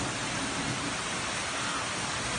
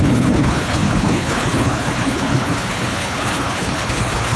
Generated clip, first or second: second